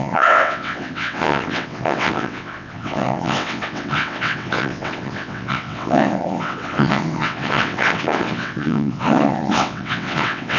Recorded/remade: remade